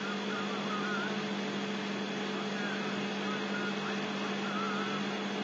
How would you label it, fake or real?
real